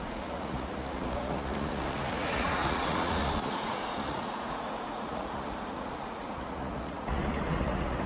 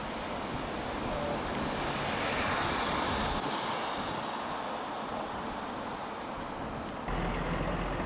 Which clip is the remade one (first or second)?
first